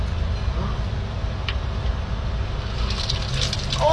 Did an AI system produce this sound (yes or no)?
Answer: no